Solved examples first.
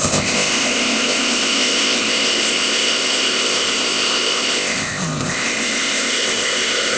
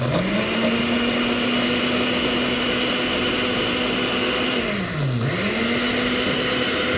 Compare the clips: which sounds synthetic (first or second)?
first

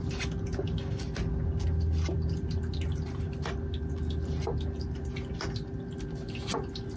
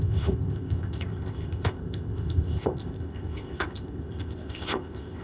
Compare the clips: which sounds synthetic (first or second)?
second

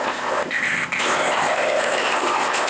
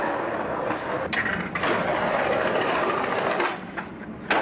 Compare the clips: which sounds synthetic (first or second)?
first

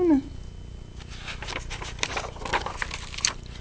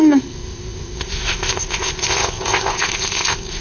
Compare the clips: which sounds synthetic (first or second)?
second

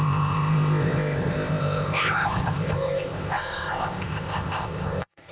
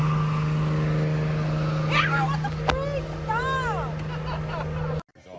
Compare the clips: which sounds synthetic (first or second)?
first